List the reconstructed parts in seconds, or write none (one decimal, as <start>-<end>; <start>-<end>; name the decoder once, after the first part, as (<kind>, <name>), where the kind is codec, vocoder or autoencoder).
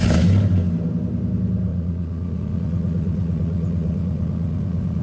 1.7-5.0 (vocoder, Vocos)